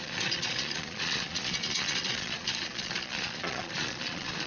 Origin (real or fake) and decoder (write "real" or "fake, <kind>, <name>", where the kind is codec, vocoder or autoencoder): fake, vocoder, Vocos